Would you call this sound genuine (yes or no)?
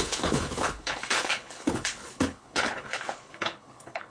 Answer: no